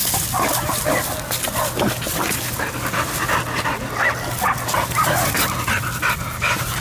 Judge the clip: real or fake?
real